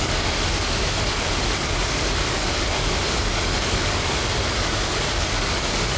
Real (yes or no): no